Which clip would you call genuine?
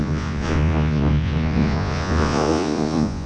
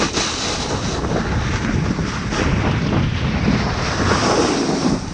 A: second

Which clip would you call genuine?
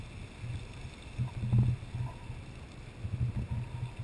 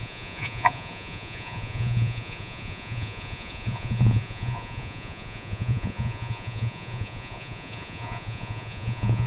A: first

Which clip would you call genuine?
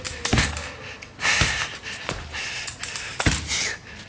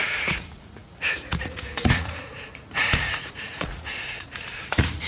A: first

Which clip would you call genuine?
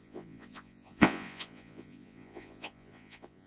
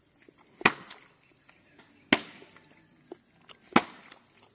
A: second